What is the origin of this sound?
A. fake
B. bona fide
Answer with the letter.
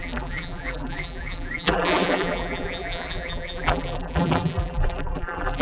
A